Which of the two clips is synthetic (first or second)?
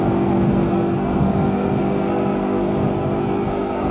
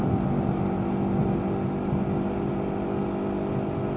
first